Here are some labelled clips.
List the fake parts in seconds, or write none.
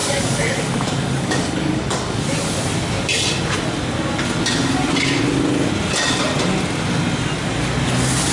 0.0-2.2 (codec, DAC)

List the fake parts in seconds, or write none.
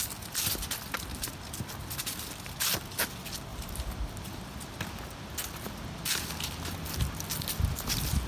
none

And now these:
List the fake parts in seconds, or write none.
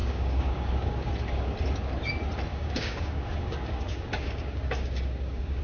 0.0-1.1 (codec, DAC); 2.5-5.6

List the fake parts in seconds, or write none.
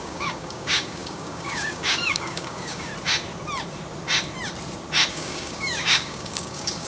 0.0-2.9 (codec, DAC); 5.1-6.9